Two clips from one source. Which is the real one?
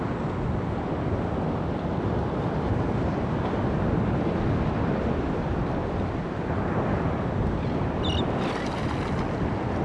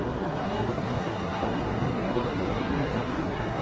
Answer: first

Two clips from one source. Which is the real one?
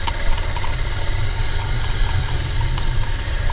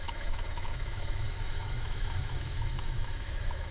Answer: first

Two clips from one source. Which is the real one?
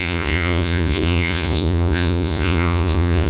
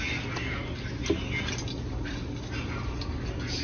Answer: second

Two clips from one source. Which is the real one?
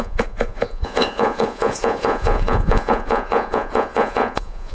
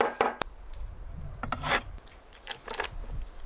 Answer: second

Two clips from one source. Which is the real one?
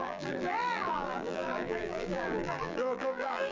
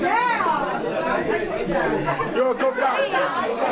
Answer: second